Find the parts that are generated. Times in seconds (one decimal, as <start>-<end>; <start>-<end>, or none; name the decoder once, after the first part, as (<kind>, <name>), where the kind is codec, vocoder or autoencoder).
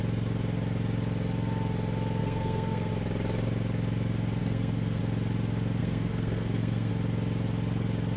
2.2-2.9 (codec, SNAC); 4.4-5.0; 5.8-6.9